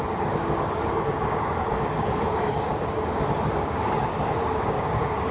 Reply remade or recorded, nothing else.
remade